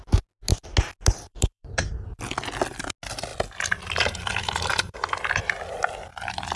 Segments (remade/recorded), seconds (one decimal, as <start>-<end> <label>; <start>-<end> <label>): 0.0-1.3 recorded; 1.3-1.8 remade; 1.8-3.3 recorded; 3.3-5.5 remade; 5.5-6.6 recorded